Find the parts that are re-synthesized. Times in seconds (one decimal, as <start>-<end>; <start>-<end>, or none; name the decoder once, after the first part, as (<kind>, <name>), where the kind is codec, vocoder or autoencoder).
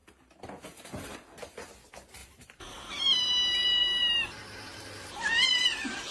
2.2-6.1 (vocoder, BigVGAN v2)